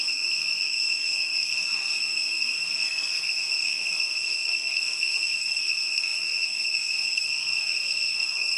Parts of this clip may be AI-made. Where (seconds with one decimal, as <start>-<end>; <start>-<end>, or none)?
0.0-8.6